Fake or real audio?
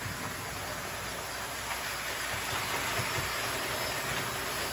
real